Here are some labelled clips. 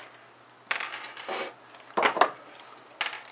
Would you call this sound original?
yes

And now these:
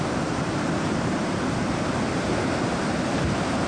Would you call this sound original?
no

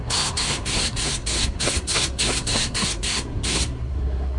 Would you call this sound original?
no